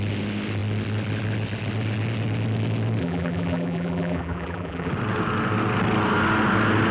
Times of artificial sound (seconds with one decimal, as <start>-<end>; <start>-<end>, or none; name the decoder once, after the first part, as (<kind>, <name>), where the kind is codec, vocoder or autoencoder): 3.0-4.9 (vocoder, BigVGAN v2)